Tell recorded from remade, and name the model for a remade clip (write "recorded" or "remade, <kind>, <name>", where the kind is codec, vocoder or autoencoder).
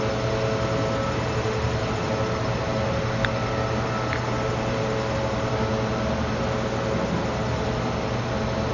recorded